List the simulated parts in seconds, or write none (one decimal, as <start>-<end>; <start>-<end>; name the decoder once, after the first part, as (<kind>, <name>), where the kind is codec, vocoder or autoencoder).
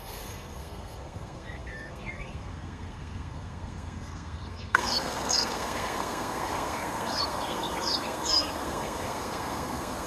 0.0-10.1 (codec, SNAC)